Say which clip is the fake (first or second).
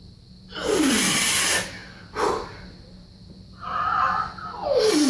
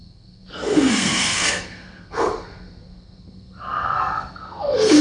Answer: second